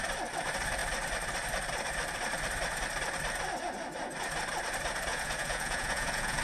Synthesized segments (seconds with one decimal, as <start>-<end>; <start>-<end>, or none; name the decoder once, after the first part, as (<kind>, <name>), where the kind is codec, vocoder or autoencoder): 5.1-6.4 (vocoder, Vocos)